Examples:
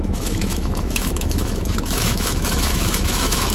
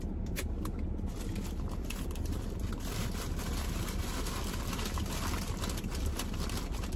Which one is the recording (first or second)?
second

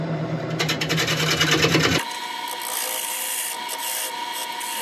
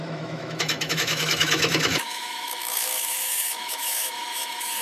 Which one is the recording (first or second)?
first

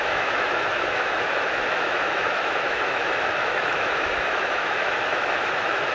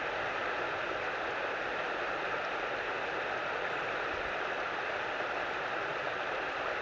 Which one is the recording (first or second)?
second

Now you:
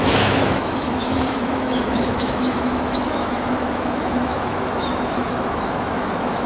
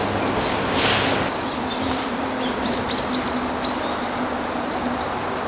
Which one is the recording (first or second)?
second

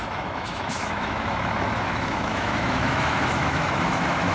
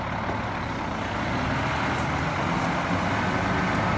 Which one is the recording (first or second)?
second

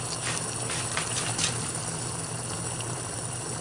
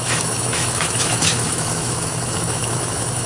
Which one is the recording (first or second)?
first